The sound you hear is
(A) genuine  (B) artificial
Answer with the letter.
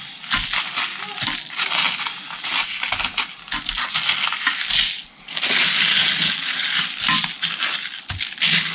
A